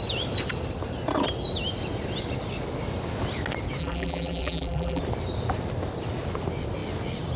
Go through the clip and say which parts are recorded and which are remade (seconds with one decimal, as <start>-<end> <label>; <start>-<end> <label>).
0.0-3.8 recorded; 3.8-5.0 remade; 5.0-7.4 recorded